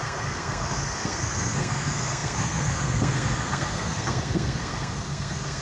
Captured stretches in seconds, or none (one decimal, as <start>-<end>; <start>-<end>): none